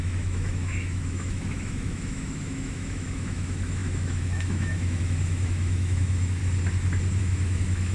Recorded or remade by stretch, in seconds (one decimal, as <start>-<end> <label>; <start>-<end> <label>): 0.0-6.4 remade; 6.4-7.2 recorded; 7.2-7.9 remade